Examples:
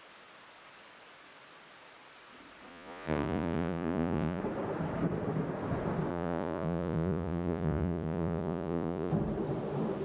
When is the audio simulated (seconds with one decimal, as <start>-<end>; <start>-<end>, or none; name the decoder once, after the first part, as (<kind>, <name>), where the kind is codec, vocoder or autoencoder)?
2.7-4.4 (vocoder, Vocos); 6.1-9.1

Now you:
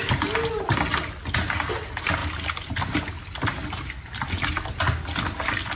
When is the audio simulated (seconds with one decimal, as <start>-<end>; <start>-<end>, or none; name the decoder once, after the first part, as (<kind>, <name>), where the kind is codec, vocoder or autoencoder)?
none

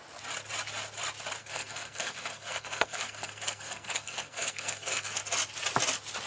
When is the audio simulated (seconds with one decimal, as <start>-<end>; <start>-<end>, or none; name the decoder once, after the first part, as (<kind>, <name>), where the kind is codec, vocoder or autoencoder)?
1.4-5.2 (codec, SNAC)

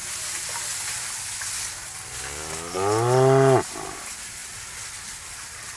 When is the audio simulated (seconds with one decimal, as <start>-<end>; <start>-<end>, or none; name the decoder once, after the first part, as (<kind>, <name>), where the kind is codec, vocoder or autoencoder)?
none